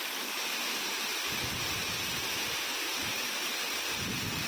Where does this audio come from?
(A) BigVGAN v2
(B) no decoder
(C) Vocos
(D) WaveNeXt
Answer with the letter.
A